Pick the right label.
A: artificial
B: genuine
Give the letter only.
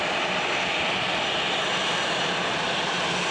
B